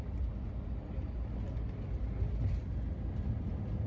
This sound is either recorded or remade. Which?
recorded